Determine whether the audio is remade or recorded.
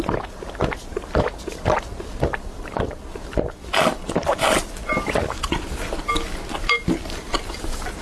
recorded